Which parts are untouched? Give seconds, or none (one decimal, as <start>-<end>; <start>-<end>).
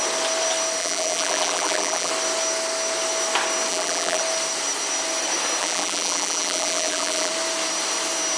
0.0-0.8; 2.1-3.7; 4.2-5.6; 7.3-8.4